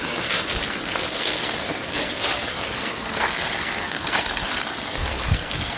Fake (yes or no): yes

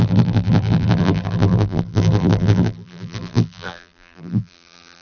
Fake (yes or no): yes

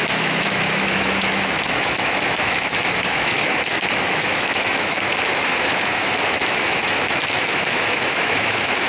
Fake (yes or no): yes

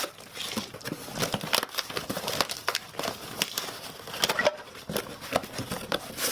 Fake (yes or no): no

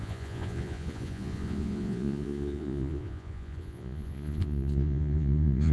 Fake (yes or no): yes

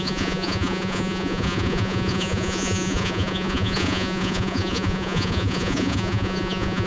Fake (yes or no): yes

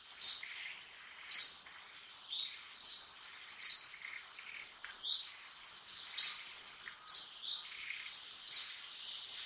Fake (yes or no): no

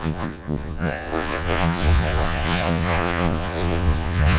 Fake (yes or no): yes